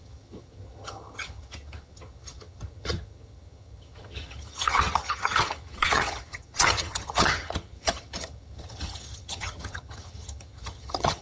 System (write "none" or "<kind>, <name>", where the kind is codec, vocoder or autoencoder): vocoder, HiFi-GAN